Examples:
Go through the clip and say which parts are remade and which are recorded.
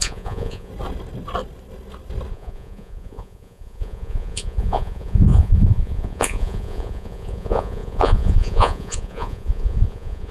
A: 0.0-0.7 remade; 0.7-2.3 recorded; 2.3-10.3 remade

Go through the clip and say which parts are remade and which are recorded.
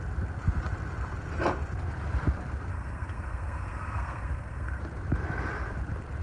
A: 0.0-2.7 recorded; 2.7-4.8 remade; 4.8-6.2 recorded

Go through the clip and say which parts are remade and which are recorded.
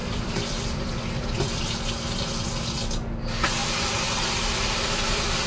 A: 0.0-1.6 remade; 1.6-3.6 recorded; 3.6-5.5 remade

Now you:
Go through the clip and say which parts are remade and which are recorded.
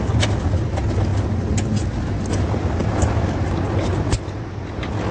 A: 0.0-1.1 recorded; 1.1-1.7 remade; 1.7-5.1 recorded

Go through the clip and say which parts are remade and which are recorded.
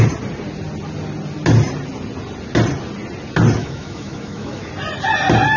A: 0.0-3.6 recorded; 3.6-4.7 remade; 4.7-5.6 recorded